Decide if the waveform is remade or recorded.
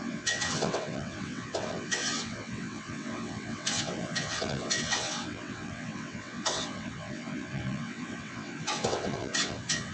remade